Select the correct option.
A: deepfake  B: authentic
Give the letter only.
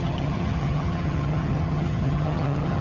A